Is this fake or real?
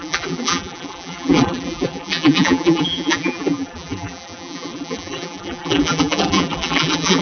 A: fake